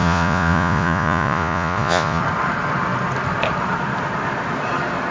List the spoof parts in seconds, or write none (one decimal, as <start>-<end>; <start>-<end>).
0.0-2.2